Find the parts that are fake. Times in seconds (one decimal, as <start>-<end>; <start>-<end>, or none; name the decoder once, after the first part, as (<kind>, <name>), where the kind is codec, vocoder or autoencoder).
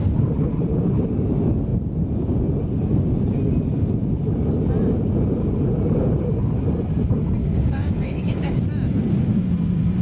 7.4-8.6 (codec, DAC)